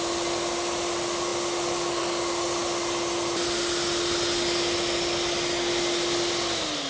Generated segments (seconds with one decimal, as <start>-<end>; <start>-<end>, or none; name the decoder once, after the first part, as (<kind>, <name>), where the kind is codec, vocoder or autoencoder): none